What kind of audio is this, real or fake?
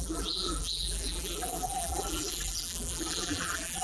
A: fake